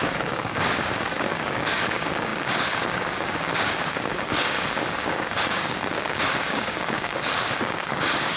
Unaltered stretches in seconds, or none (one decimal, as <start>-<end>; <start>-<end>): none